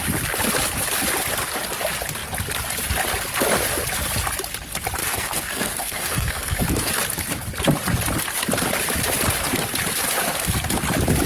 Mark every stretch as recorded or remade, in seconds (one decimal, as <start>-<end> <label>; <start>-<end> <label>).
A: 0.0-5.0 recorded; 5.0-6.9 remade; 6.9-11.3 recorded